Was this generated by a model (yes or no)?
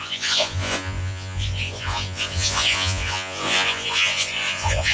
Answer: yes